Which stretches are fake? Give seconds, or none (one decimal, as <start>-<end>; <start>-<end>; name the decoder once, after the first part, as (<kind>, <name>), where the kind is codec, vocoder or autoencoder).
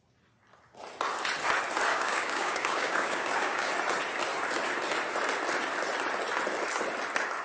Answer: 1.9-3.7 (codec, DAC)